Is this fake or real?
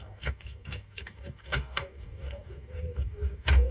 fake